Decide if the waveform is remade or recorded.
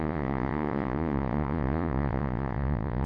remade